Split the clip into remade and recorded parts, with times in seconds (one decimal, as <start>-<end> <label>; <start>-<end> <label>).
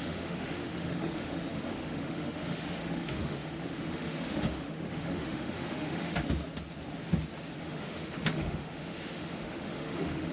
0.0-6.2 remade; 6.2-7.6 recorded; 7.6-10.3 remade